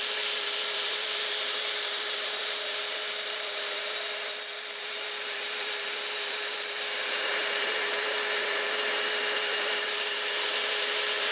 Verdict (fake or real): fake